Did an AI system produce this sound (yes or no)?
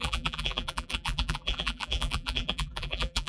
yes